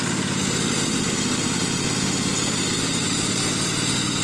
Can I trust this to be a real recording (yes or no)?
yes